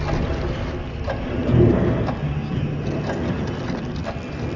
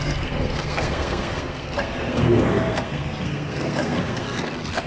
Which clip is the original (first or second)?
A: first